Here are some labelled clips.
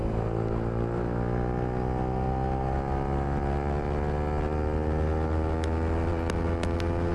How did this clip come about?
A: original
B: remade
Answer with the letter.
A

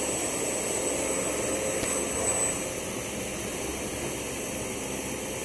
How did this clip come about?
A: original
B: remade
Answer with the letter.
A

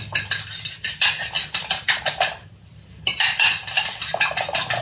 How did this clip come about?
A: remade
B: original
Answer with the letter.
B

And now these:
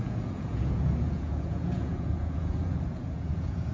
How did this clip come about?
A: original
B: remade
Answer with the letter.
B